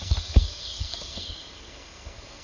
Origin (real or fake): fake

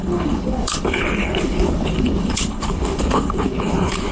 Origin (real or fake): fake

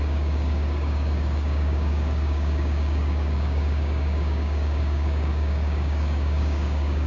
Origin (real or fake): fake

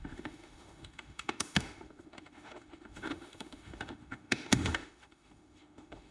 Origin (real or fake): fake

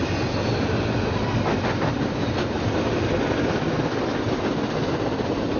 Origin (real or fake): real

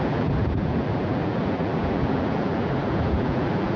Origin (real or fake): fake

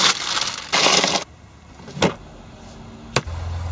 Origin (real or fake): real